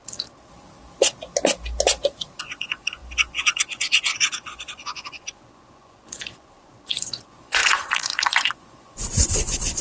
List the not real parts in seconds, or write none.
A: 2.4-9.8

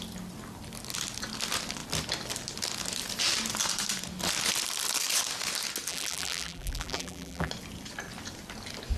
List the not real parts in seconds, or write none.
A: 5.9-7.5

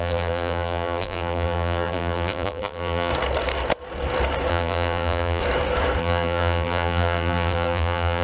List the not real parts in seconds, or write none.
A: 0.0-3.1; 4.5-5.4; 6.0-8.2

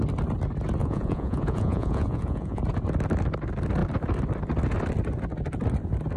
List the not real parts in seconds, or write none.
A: 0.8-2.6

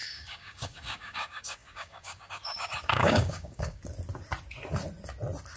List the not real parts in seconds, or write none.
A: 0.0-3.8

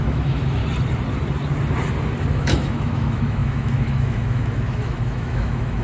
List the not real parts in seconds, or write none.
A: 0.0-0.6; 2.3-5.8